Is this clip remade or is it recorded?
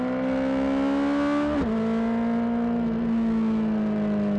recorded